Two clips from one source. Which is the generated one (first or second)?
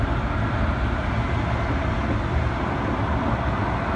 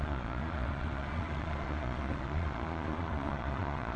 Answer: second